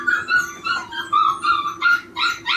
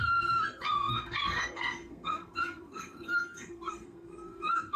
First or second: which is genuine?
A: first